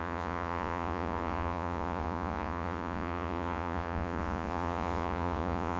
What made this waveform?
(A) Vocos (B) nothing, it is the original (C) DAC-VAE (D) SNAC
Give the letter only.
A